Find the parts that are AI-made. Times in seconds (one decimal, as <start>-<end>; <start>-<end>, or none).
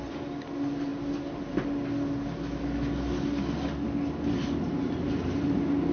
none